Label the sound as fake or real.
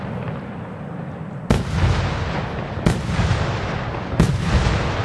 real